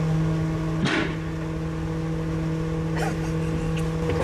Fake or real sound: real